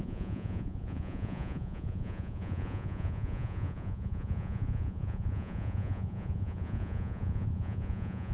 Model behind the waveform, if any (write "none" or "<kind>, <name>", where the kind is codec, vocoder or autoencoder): vocoder, Vocos